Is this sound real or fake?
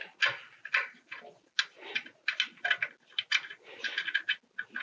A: real